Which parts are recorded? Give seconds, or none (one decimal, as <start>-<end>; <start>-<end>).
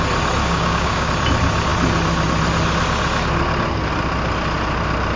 0.0-0.4; 1.1-5.2